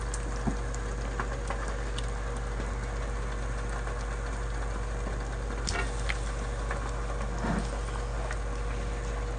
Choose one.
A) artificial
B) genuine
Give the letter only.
B